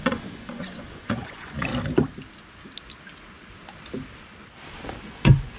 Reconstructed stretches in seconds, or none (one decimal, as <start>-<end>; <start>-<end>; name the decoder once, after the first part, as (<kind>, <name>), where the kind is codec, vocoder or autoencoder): 0.0-1.7 (vocoder, Vocos); 5.0-5.6